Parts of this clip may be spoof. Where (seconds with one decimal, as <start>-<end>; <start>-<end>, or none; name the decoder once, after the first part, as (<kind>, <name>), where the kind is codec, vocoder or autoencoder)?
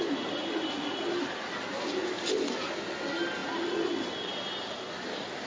none